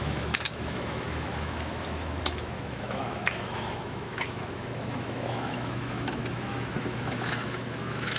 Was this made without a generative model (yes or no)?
no